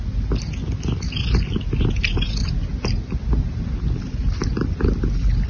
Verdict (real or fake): real